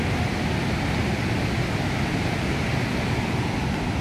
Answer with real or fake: real